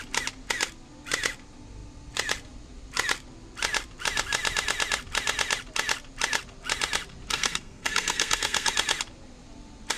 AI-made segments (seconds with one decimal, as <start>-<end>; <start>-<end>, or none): 7.3-8.7